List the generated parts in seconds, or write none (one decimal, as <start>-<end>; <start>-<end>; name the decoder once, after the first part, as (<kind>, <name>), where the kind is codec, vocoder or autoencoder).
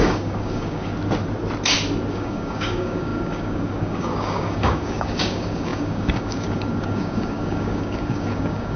0.0-0.9 (codec, DAC); 2.1-8.8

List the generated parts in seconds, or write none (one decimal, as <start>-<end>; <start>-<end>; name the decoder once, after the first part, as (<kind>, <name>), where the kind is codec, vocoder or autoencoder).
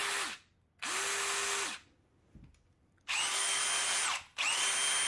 3.1-3.6 (codec, DAC)